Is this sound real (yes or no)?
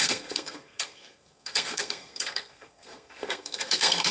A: no